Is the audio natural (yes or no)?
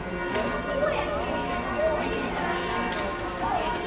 yes